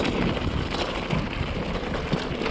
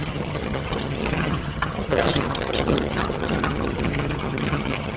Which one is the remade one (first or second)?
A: second